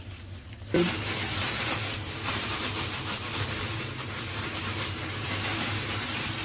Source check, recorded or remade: remade